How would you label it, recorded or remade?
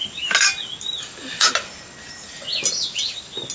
recorded